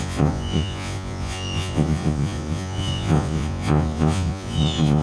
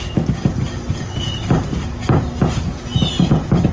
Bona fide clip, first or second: second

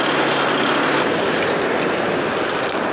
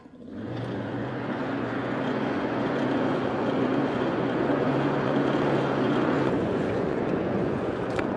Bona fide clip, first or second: first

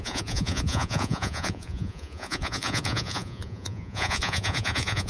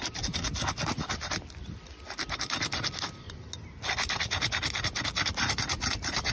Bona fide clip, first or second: second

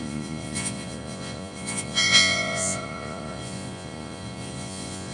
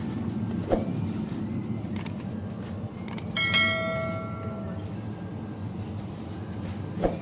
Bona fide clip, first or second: second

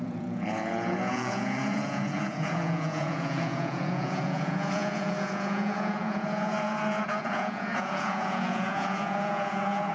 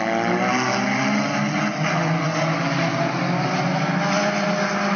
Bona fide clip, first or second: second